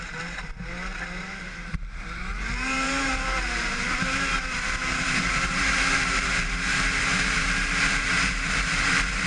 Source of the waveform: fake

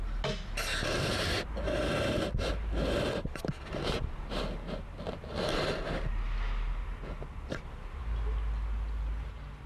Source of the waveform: real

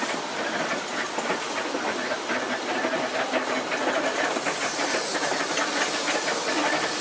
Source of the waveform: real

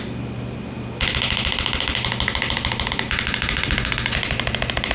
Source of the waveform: real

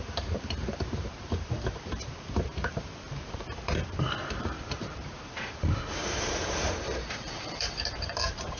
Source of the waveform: fake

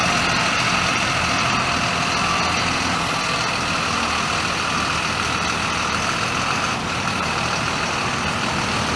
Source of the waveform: real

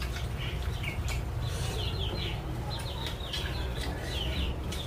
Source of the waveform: real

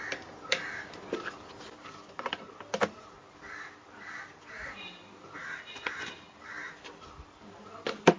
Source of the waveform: fake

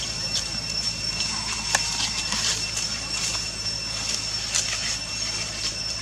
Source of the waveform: real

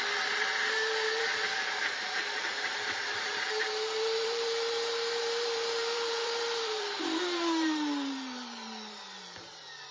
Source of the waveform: fake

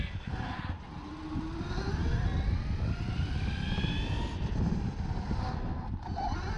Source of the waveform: real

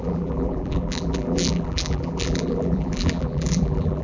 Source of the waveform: fake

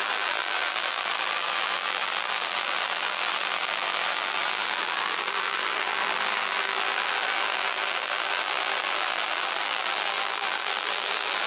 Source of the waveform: fake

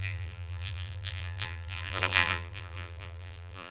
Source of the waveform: fake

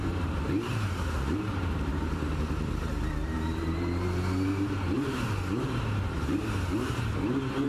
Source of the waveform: fake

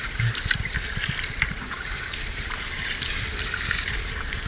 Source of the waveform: fake